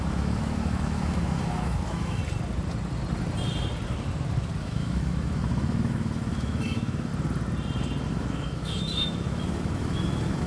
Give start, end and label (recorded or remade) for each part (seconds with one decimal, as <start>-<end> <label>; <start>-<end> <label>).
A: 0.0-2.2 remade; 2.2-4.6 recorded; 4.6-7.1 remade; 7.1-8.1 recorded; 8.1-10.5 remade